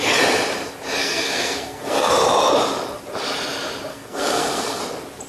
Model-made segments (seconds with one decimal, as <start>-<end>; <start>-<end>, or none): 1.0-2.1; 3.9-4.8